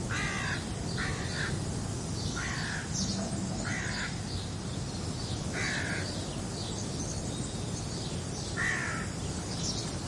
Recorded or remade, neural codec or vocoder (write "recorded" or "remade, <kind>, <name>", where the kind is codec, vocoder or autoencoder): recorded